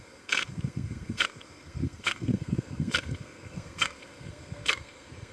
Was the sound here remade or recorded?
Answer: remade